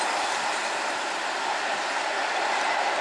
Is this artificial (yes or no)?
no